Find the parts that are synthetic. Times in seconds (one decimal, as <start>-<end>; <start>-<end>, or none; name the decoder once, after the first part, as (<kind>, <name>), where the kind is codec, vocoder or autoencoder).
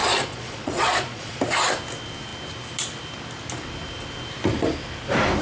0.0-1.4 (vocoder, Vocos)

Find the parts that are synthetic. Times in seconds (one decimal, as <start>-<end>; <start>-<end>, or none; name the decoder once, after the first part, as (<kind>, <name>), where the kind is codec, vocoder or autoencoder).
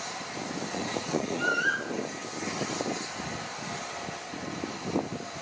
0.7-1.4 (vocoder, Vocos)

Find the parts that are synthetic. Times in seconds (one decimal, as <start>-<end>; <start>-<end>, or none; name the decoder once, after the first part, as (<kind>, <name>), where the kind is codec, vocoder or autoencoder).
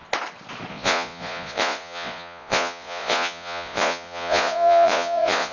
0.7-5.5 (vocoder, Vocos)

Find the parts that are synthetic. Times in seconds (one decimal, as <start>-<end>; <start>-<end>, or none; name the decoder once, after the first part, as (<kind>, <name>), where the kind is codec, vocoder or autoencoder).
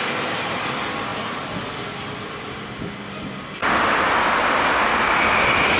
none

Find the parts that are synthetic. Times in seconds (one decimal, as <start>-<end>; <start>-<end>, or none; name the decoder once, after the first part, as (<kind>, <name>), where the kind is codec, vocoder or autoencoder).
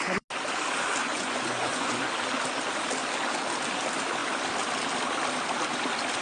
1.0-2.0 (vocoder, Vocos)